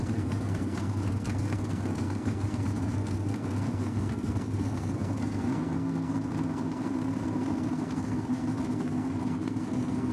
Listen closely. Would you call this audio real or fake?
fake